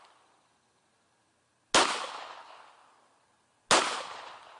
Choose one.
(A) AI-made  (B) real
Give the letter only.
B